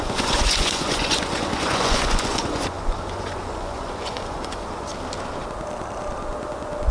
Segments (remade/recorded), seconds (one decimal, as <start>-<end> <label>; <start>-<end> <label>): 0.0-4.9 remade; 4.9-6.5 recorded; 6.5-6.9 remade